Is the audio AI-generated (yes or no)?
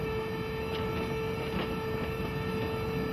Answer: no